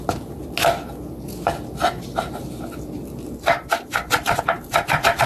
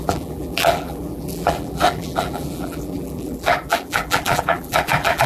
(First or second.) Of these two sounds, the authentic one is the first